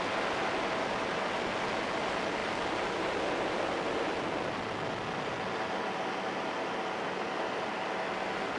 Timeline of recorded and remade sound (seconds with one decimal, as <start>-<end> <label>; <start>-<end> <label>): 0.0-8.6 recorded